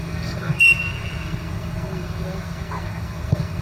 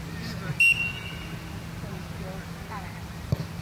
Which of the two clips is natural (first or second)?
second